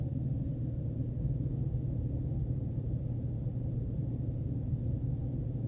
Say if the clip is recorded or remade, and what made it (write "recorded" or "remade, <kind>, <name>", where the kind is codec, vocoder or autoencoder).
remade, vocoder, BigVGAN v2